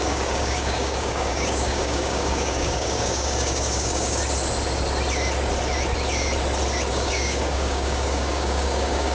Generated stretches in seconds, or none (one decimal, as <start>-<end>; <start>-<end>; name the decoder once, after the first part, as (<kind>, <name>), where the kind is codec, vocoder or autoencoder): 0.0-4.2 (codec, DAC); 6.9-9.1